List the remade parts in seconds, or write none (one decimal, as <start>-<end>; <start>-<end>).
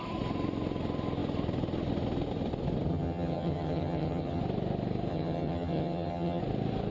2.9-4.4; 5.1-6.4